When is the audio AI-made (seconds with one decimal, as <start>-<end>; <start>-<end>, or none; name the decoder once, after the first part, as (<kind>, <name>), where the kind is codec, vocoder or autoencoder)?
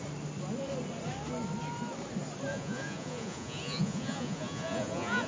2.5-5.3 (vocoder, Vocos)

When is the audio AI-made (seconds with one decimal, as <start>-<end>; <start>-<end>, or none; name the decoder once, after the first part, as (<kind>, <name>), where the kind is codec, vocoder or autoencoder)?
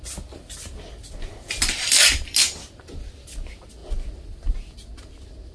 none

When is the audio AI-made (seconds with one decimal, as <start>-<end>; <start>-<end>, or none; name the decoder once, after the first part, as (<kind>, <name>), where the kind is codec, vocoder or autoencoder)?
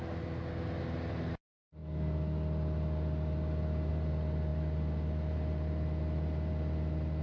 none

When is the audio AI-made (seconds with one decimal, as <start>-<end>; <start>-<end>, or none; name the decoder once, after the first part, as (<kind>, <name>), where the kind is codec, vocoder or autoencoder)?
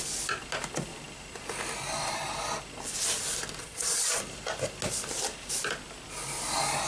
3.6-4.2 (vocoder, Vocos)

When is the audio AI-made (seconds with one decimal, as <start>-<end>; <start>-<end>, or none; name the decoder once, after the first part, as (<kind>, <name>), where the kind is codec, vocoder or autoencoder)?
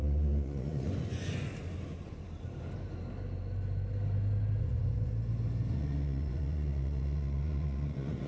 0.0-1.5 (vocoder, Vocos); 4.6-5.1; 5.7-8.3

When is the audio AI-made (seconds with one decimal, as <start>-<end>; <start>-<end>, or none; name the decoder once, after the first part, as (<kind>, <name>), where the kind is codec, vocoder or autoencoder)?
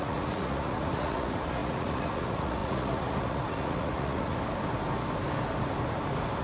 0.0-4.3 (vocoder, Vocos)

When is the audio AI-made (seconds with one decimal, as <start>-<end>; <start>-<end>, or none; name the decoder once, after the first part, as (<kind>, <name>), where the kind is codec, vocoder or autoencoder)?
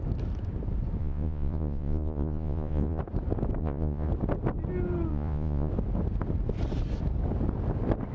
1.0-3.0 (vocoder, Vocos); 3.6-4.1; 5.1-5.7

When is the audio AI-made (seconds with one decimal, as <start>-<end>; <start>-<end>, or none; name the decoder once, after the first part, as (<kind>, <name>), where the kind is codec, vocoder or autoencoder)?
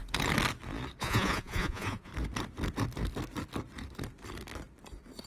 1.0-2.1 (vocoder, Vocos)